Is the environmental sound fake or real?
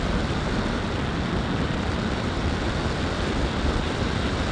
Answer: real